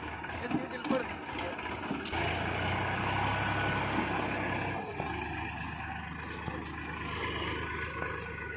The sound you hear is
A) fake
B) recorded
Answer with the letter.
B